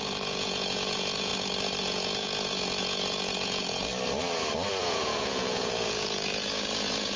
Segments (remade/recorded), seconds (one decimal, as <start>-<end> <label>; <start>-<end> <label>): 0.0-1.3 remade; 1.3-1.8 recorded; 1.8-3.9 remade; 3.9-4.8 recorded; 4.8-7.2 remade